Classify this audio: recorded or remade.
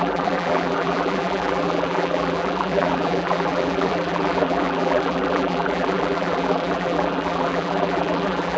remade